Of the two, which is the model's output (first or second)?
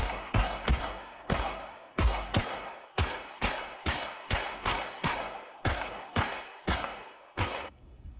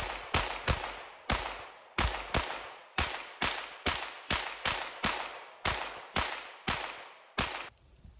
first